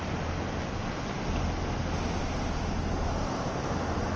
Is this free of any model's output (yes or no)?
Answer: yes